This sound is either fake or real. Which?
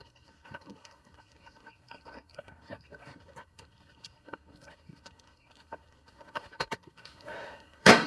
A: fake